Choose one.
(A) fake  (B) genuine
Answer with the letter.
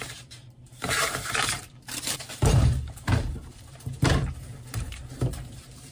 A